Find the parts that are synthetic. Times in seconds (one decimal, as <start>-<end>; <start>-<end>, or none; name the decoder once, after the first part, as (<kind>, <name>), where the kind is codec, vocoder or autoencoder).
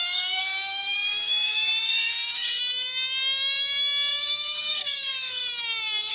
0.0-2.6 (codec, DAC); 4.1-5.4